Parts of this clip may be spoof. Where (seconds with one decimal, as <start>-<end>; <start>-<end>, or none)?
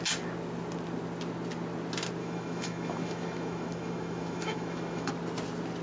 2.2-5.1